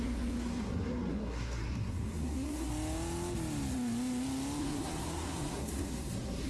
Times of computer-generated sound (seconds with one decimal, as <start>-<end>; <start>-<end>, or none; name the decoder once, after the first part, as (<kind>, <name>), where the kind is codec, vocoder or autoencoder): 0.0-2.7 (codec, SNAC); 4.6-6.5